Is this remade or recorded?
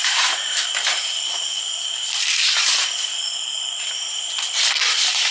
remade